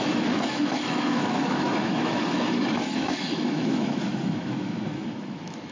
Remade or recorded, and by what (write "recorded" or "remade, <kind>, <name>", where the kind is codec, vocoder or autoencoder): remade, autoencoder, DAC-VAE